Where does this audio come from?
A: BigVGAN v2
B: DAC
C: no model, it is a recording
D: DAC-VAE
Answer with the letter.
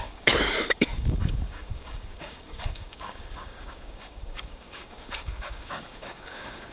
B